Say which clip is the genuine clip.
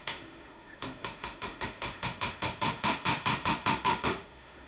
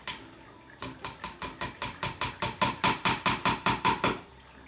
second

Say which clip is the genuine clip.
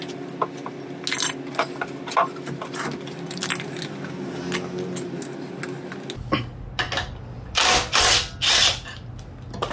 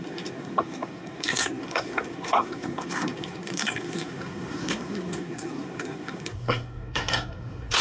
first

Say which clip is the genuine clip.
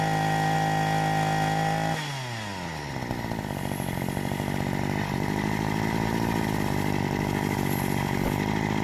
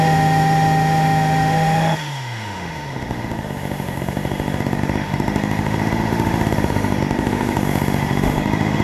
first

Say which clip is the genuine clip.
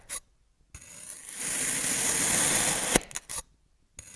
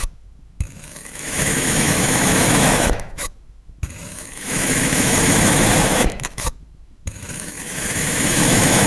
first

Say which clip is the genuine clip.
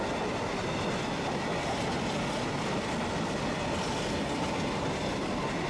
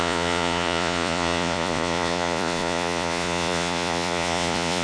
first